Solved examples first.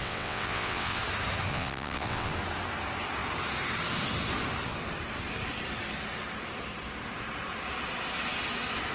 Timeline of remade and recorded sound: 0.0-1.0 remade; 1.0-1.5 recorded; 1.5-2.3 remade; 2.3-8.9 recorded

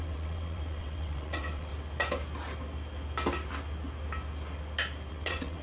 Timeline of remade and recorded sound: 0.0-1.7 remade; 1.7-5.1 recorded; 5.1-5.6 remade

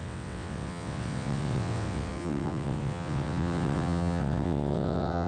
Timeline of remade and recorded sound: 0.0-5.3 remade

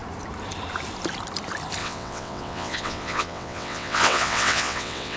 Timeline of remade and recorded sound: 0.0-1.8 recorded; 1.8-5.2 remade

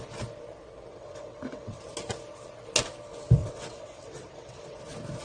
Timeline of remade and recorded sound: 0.0-0.9 recorded; 0.9-1.8 remade; 1.8-3.4 recorded; 3.4-4.8 remade; 4.8-5.2 recorded